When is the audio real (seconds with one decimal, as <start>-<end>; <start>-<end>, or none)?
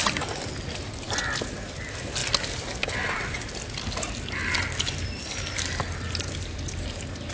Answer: 0.0-7.3